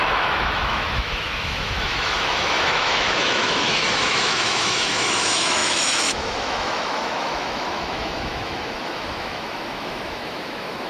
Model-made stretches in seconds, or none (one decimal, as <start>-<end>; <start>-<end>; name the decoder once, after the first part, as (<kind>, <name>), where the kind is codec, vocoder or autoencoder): 0.0-10.9 (autoencoder, DAC-VAE)